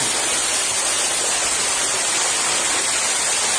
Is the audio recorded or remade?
recorded